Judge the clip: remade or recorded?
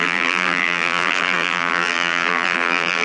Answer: remade